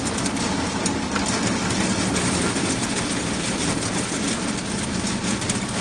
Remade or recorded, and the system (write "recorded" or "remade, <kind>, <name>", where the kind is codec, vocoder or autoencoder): recorded